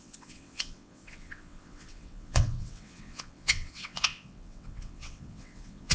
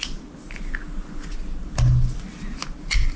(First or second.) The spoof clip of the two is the first